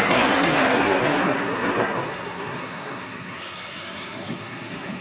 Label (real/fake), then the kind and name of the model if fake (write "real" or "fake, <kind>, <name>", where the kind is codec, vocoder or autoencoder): fake, codec, SNAC